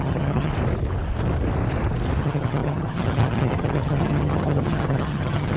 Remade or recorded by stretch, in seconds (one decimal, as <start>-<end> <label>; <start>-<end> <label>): 0.0-0.5 remade; 0.5-2.2 recorded; 2.2-5.6 remade